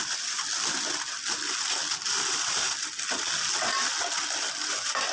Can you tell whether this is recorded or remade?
recorded